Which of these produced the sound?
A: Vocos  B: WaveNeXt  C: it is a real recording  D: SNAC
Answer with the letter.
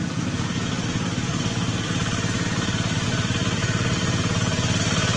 C